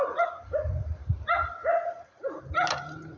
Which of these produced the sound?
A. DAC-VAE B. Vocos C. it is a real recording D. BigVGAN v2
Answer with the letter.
C